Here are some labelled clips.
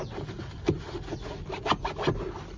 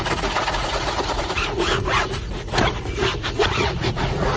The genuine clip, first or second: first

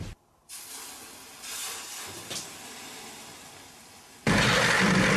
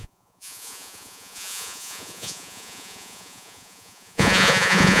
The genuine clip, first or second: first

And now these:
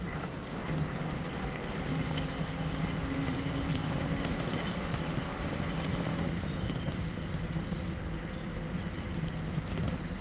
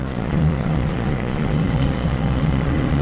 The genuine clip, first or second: first